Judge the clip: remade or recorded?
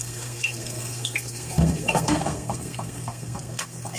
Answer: remade